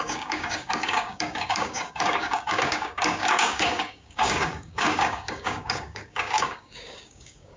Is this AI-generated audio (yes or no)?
yes